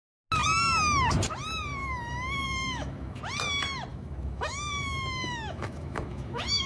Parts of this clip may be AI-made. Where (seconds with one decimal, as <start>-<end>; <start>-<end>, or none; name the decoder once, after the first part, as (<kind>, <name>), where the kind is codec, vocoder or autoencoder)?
1.8-3.2 (autoencoder, DAC-VAE); 3.9-6.7